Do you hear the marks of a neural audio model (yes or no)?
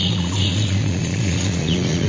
yes